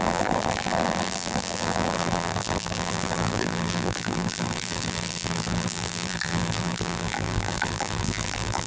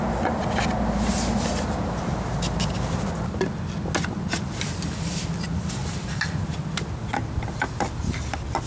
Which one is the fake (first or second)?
first